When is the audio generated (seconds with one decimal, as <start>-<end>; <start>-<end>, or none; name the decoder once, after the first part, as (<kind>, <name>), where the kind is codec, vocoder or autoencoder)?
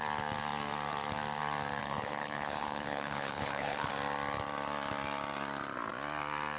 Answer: 1.8-3.9 (codec, HILCodec)